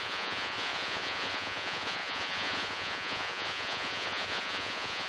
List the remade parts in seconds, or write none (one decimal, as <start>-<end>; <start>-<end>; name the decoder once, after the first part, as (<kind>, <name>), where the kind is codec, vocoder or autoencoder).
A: 0.0-5.1 (vocoder, Vocos)